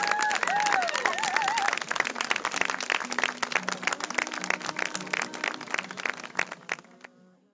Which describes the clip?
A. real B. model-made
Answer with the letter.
A